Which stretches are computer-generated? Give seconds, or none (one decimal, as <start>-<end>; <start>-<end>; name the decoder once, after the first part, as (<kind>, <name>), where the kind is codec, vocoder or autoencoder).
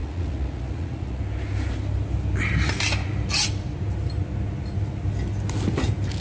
0.0-1.2 (vocoder, Vocos)